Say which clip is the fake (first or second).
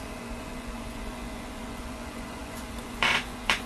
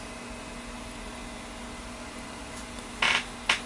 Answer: first